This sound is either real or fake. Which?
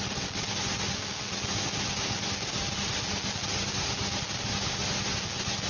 real